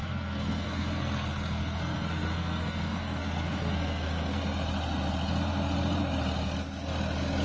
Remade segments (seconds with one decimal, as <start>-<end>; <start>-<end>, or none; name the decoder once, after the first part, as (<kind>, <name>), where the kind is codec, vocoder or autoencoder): 0.0-4.4 (codec, SNAC)